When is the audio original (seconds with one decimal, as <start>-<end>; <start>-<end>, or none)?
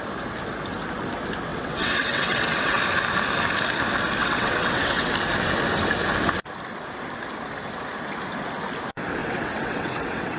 0.0-1.5; 2.8-4.2; 5.1-9.2